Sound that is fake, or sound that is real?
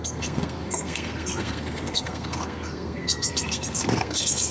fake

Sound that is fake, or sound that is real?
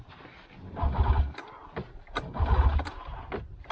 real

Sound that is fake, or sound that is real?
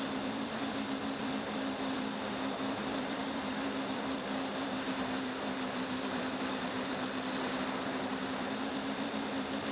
fake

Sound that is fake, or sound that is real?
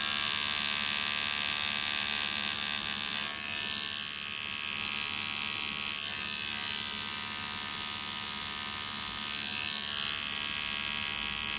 real